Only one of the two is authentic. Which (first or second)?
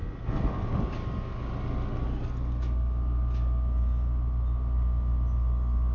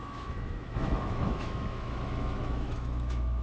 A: first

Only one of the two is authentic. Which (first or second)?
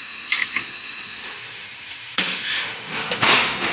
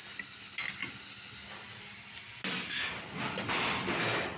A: second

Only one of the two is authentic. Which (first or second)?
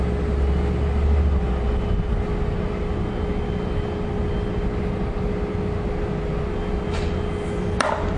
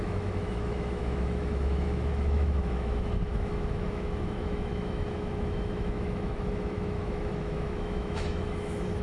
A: first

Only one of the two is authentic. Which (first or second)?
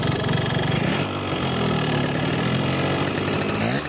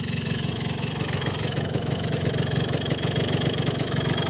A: first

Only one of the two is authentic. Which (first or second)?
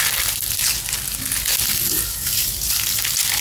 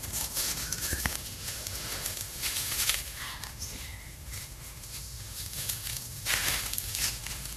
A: first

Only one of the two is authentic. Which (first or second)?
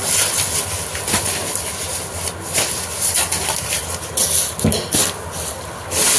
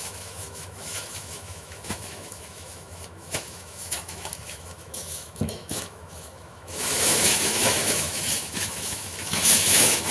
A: first